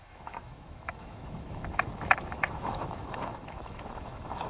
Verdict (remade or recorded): remade